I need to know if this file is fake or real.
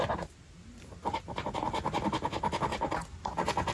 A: real